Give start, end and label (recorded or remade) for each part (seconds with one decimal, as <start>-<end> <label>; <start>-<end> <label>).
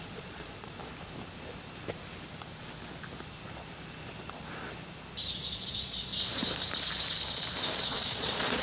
0.0-0.8 remade; 0.8-5.4 recorded; 5.4-6.1 remade; 6.1-7.9 recorded; 7.9-8.6 remade